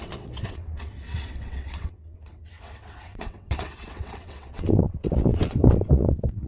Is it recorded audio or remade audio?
remade